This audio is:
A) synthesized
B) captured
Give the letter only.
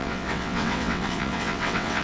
A